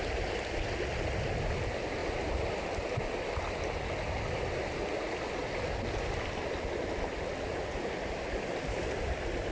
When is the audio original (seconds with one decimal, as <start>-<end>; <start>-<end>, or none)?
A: 0.0-9.5